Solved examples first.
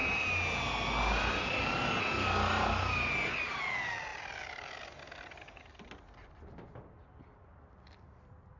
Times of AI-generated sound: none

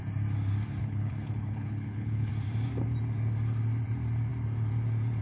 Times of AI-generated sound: 0.8-2.3 (codec, HILCodec)

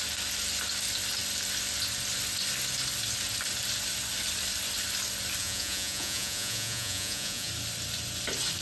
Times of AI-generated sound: 5.4-7.5 (vocoder, Vocos)

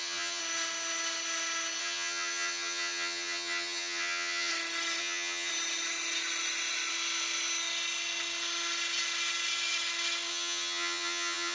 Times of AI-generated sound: 0.0-0.4 (vocoder, HiFi-GAN); 1.8-4.5; 5.0-5.5; 10.3-11.5

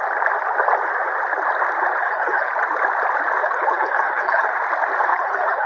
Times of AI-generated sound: 2.0-2.5 (codec, HILCodec); 3.4-4.5; 5.1-5.7

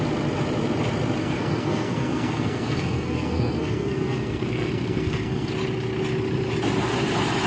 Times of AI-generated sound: 1.2-5.5 (codec, SNAC)

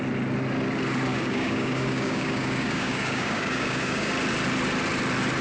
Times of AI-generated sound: 1.1-4.1 (codec, DAC)